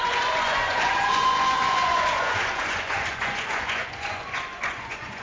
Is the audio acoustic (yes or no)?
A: no